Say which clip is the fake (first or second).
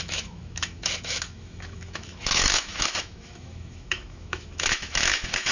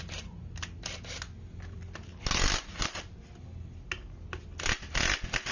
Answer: first